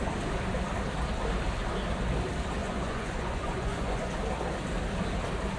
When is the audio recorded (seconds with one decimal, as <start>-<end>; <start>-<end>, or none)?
0.0-2.6; 4.1-5.6